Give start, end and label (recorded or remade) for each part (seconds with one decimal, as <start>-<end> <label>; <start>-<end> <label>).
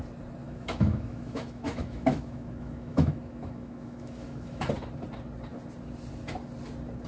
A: 0.0-0.4 recorded; 0.4-4.7 remade; 4.7-7.1 recorded